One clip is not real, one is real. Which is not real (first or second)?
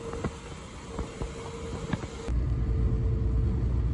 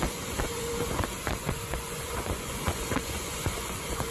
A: second